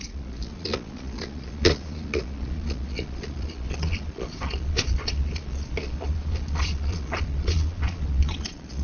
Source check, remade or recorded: remade